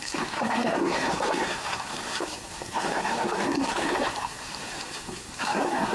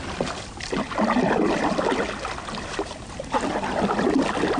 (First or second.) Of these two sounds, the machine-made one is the first